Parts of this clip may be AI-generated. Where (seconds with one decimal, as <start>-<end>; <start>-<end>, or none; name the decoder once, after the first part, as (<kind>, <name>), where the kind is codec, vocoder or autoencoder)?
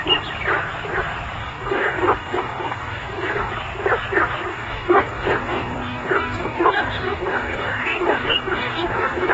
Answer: 1.4-3.5 (codec, DAC); 4.5-9.3